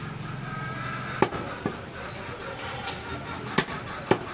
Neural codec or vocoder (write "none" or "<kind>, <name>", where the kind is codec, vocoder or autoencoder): none